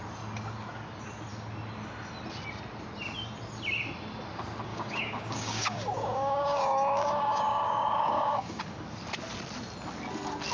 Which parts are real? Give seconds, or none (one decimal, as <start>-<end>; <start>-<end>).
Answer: 0.0-4.7; 8.6-10.5